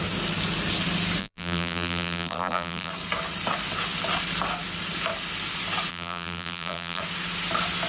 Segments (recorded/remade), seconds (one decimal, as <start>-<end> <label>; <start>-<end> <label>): 0.0-1.2 recorded; 1.2-2.9 remade; 2.9-5.9 recorded; 5.9-7.0 remade; 7.0-7.9 recorded